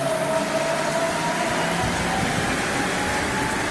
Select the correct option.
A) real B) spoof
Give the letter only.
A